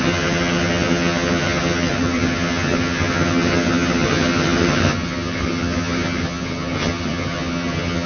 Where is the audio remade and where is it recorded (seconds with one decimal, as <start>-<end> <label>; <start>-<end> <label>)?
0.0-8.1 remade